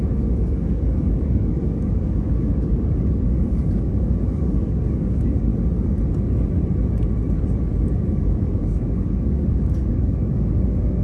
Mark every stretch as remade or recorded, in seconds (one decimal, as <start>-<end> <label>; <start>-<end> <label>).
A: 0.0-5.5 remade; 5.5-7.6 recorded; 7.6-11.0 remade